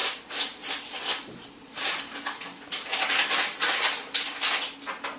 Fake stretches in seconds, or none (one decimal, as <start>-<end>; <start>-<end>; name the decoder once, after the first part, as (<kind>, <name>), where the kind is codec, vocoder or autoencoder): 0.0-2.0 (vocoder, BigVGAN v2)